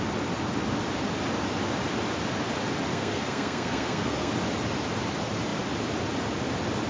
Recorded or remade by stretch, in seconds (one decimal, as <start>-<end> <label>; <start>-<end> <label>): 0.0-2.9 recorded; 2.9-4.3 remade; 4.3-6.9 recorded